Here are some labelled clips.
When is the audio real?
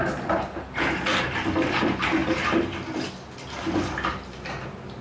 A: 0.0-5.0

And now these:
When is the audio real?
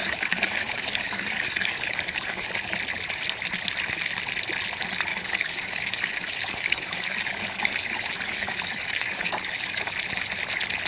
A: 2.5-5.1; 9.9-10.9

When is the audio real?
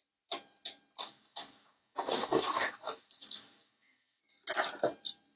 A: 0.0-1.0; 4.2-5.4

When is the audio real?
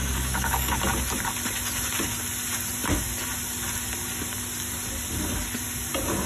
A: 0.8-6.3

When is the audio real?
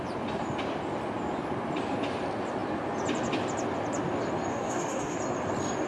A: 0.0-4.5; 5.2-5.9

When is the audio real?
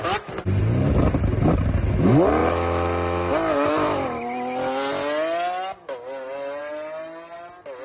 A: 0.0-7.8